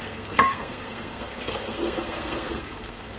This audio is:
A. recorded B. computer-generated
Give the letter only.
B